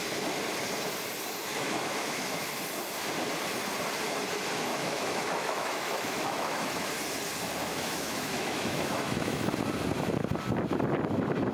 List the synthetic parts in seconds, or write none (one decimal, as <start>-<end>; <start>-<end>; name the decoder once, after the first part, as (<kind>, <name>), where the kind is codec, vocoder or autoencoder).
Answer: 1.5-2.4 (autoencoder, DAC-VAE); 4.7-6.9; 7.7-9.5